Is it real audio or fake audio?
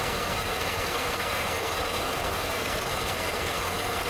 fake